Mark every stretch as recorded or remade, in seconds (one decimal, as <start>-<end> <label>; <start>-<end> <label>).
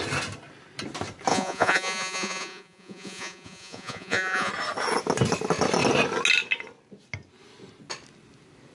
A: 0.0-1.3 recorded; 1.3-4.5 remade; 4.5-8.7 recorded